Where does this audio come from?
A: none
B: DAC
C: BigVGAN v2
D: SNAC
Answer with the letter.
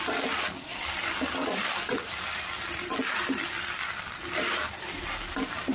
A